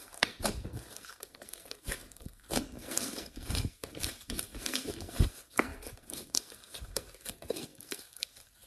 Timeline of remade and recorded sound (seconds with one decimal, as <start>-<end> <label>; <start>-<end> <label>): 0.0-8.7 remade